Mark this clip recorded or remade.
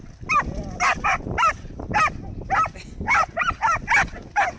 recorded